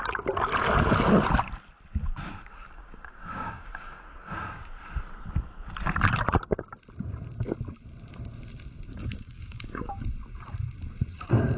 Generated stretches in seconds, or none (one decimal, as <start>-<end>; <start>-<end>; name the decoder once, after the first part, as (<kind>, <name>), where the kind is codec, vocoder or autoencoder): 2.5-4.2 (codec, DAC); 8.9-9.9